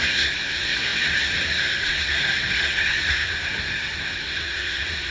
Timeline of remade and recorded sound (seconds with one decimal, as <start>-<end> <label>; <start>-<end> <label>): 0.0-5.1 remade